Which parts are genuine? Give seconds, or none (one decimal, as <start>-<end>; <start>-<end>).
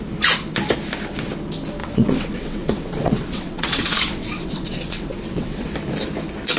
0.0-1.8; 5.7-6.6